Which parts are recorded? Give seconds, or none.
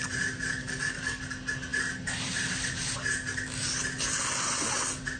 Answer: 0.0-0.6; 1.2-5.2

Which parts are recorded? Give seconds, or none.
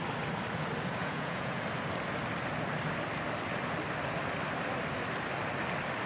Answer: 0.0-1.0; 1.6-6.1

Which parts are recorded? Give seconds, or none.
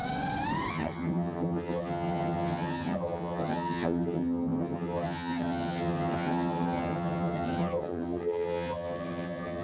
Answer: 0.0-0.7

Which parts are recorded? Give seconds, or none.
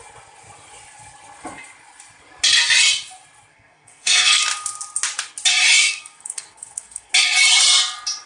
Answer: 0.0-3.5; 4.4-5.8; 7.1-8.3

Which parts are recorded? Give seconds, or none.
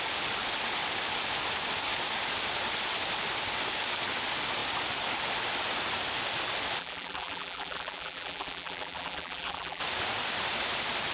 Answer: 0.0-6.8; 9.8-11.1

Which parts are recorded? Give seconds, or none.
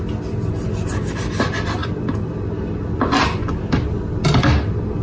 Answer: 0.0-5.0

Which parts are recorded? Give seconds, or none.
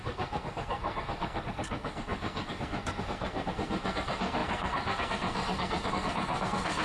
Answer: none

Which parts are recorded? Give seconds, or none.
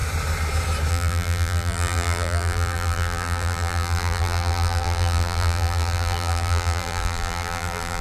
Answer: 0.0-0.9